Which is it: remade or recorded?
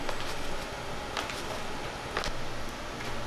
recorded